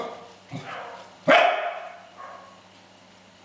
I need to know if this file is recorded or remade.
recorded